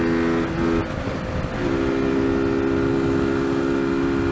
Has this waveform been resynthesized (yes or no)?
no